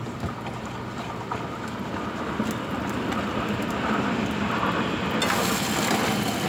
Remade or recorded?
recorded